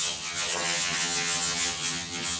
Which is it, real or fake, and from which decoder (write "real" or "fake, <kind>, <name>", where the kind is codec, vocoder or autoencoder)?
fake, vocoder, HiFi-GAN